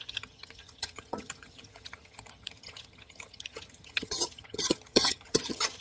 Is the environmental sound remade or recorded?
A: remade